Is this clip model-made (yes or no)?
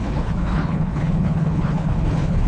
yes